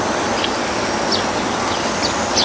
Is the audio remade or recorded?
recorded